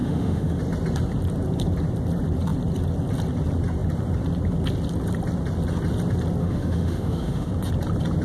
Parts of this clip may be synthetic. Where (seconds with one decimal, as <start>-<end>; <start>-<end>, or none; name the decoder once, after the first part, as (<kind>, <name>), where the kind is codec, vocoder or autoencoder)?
0.0-0.6 (autoencoder, DAC-VAE); 6.4-7.5